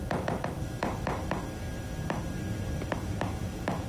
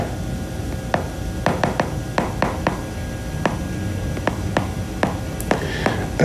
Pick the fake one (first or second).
first